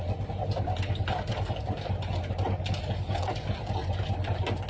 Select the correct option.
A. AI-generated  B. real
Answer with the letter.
B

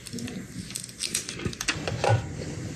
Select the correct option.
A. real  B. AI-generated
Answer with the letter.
B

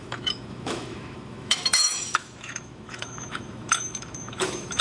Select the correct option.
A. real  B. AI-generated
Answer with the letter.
B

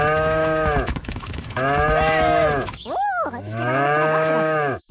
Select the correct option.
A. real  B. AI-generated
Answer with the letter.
B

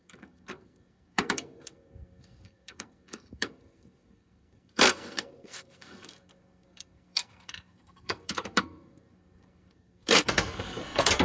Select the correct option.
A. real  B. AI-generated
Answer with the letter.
B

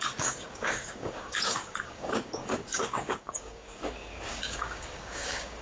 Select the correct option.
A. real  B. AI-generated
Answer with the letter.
B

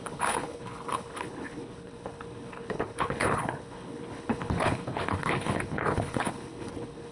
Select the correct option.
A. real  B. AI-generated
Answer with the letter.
B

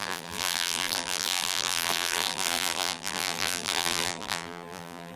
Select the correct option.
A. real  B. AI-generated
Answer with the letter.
B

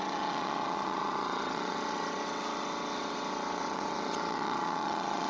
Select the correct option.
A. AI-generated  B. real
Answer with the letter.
A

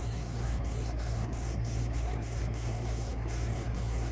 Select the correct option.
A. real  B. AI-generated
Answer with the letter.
B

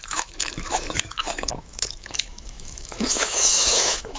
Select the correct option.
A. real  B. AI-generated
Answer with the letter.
B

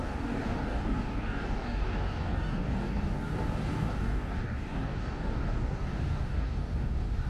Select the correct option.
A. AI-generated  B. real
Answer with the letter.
A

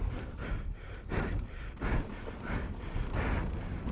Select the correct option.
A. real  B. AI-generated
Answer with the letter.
A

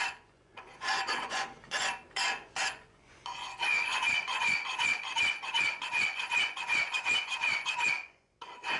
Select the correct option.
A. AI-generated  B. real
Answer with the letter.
A